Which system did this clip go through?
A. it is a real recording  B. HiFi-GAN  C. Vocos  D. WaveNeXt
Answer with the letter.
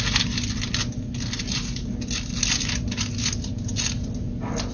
A